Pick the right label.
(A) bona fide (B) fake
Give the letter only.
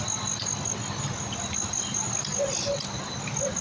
A